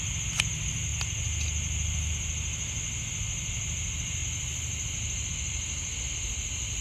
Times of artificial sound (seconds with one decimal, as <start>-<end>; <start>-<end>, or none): none